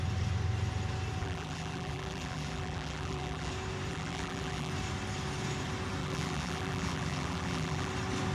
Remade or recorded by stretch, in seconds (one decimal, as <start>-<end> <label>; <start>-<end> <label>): 0.0-1.2 recorded; 1.2-3.5 remade; 3.5-3.9 recorded; 3.9-4.7 remade; 4.7-6.0 recorded; 6.0-7.9 remade; 7.9-8.3 recorded